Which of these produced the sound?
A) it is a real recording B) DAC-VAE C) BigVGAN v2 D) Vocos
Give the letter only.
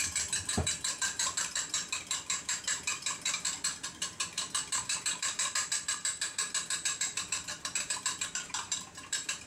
C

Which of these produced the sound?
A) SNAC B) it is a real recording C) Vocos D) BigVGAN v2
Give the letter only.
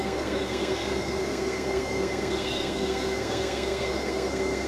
A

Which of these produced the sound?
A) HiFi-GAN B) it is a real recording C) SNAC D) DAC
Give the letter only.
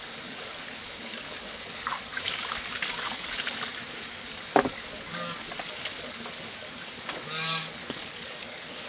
D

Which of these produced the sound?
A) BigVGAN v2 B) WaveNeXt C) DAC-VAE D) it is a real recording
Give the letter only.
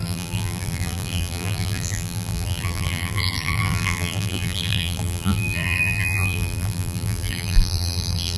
A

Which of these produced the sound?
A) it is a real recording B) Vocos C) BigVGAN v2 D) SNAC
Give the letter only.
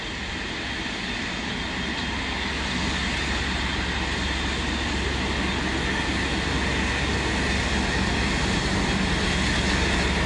A